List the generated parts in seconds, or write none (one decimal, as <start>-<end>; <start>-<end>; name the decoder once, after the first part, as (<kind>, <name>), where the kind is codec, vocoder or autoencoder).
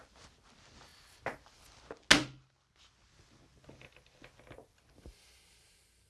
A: none